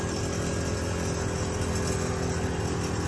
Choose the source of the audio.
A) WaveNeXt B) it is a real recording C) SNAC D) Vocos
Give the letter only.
B